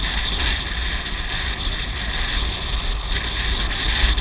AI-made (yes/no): no